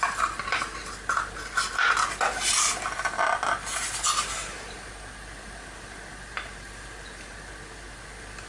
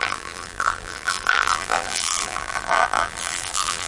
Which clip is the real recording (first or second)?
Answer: first